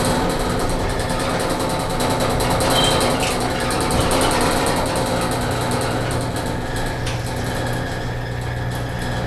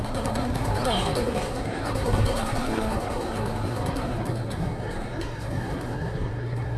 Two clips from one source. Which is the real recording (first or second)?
first